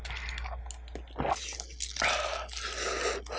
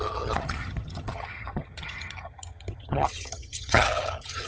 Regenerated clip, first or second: second